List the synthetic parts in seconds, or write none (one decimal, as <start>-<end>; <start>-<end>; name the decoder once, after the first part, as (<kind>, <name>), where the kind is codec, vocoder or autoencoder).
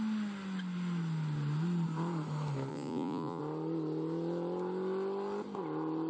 2.7-3.4 (vocoder, Vocos)